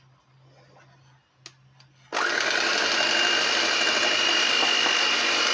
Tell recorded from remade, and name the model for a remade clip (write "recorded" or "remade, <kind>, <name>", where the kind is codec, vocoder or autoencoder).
recorded